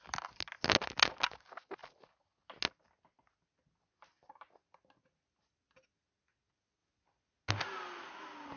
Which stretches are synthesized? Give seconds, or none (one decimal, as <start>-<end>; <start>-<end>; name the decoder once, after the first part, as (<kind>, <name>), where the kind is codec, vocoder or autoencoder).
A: none